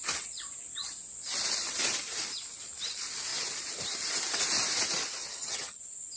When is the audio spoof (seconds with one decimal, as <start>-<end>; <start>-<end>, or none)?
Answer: 5.2-5.8